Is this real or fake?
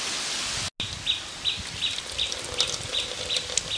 real